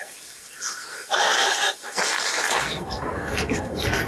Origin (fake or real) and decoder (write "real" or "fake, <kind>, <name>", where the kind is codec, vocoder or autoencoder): fake, codec, SNAC